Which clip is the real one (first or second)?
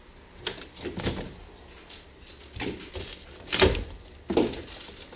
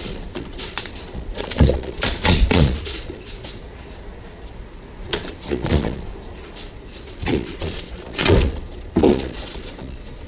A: first